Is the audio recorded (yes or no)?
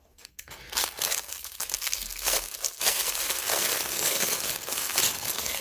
no